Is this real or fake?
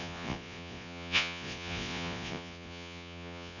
fake